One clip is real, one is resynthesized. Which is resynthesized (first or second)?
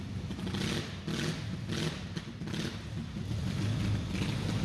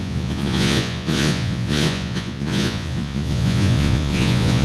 second